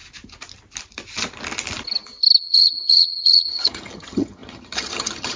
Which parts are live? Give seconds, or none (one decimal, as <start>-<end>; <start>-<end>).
0.0-2.4